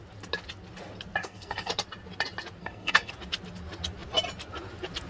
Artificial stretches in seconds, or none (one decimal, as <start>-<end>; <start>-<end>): 1.2-1.7; 2.6-3.1